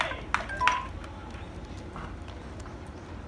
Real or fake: real